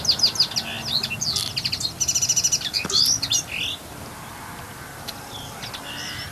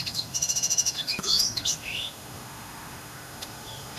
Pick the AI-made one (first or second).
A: second